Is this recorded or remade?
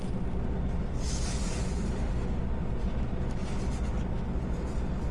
recorded